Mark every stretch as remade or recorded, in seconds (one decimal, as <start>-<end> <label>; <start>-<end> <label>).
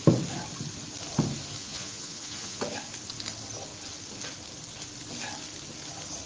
0.0-1.6 recorded; 1.6-2.6 remade; 2.6-6.3 recorded